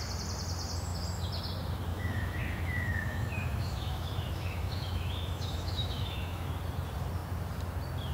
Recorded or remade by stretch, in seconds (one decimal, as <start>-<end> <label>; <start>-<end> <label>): 0.0-1.9 recorded; 1.9-6.5 remade; 6.5-8.1 recorded